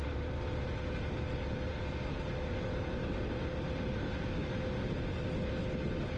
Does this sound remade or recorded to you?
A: recorded